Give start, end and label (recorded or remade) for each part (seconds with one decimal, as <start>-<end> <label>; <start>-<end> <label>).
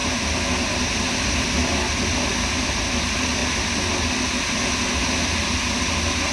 0.0-6.3 recorded